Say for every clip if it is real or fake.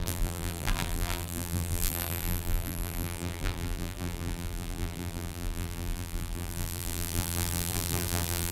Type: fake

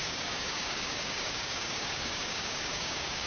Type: fake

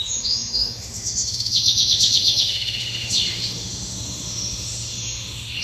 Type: fake